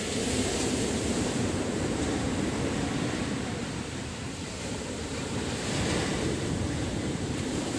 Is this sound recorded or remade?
remade